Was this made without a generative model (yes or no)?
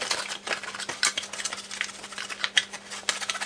yes